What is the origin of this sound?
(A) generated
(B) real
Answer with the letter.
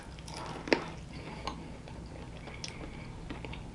B